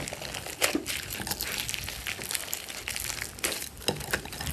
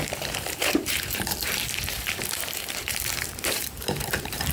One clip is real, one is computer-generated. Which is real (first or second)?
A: first